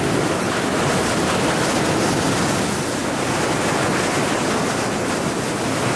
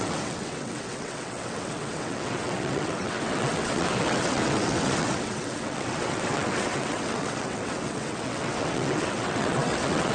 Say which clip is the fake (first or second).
second